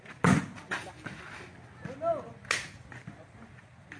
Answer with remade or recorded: recorded